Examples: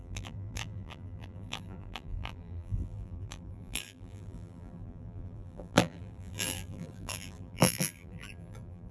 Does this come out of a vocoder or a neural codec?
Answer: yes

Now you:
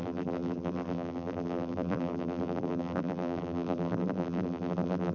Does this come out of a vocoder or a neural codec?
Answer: yes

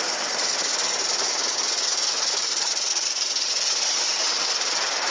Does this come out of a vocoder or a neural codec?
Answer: yes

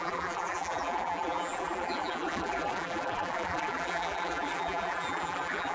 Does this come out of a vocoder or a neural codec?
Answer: yes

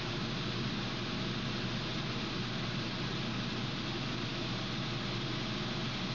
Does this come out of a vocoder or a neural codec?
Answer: no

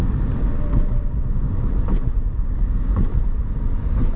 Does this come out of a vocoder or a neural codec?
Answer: yes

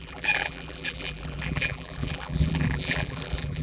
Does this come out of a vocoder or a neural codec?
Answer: yes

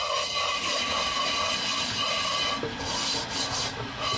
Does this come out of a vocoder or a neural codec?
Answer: no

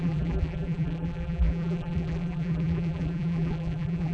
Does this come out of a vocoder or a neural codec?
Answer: yes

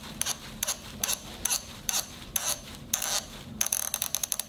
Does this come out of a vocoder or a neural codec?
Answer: yes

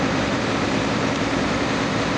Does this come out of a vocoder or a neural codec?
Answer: yes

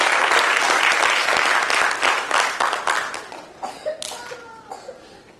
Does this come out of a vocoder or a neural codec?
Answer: no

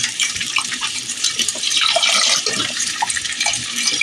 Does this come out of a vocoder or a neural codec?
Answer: yes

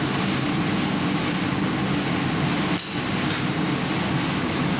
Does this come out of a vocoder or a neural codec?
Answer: no